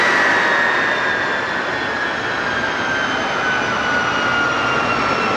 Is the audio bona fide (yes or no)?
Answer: yes